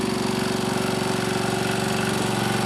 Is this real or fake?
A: real